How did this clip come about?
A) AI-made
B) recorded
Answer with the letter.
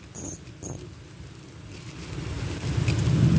B